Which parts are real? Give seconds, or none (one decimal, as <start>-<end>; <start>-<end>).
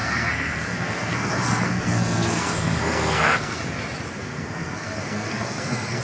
3.6-4.2